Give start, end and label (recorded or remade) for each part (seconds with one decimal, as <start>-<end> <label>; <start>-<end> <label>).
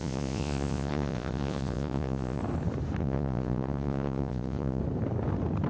0.0-2.4 remade; 2.4-3.0 recorded; 3.0-4.8 remade; 4.8-5.7 recorded